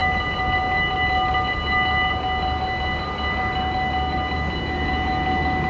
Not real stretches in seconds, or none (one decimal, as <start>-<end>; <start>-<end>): none